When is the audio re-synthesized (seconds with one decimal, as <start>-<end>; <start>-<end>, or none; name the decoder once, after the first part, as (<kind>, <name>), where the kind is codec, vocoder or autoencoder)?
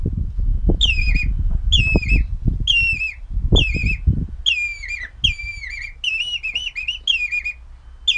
none